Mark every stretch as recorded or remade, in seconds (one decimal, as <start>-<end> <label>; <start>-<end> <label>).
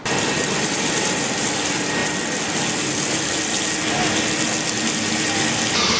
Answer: 0.0-6.0 recorded